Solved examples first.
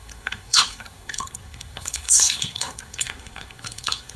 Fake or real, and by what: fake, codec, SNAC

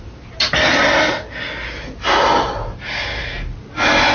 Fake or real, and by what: real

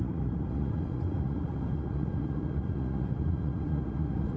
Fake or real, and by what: fake, vocoder, Vocos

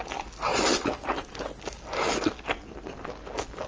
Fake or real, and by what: real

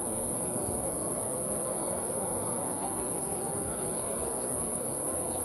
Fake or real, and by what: fake, codec, SNAC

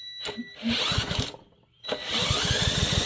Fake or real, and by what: real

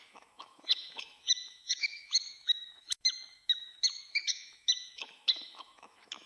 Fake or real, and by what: fake, autoencoder, DAC-VAE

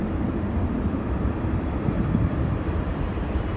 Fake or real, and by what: fake, vocoder, BigVGAN v2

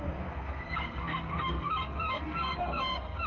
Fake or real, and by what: fake, codec, SNAC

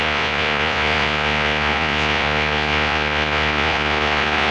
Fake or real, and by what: fake, vocoder, Vocos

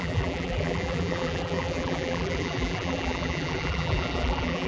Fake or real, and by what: fake, vocoder, BigVGAN v2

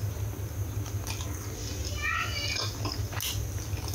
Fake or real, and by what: real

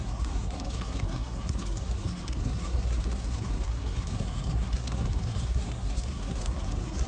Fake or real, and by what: fake, codec, SNAC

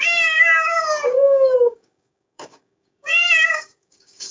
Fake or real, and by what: fake, codec, DAC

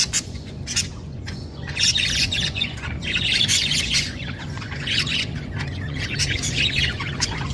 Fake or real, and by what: fake, vocoder, Vocos